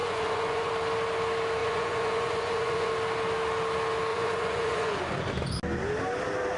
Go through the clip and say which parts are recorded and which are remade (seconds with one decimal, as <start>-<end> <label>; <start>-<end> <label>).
0.0-0.7 remade; 0.7-1.6 recorded; 1.6-2.9 remade; 2.9-4.1 recorded; 4.1-5.0 remade; 5.0-6.6 recorded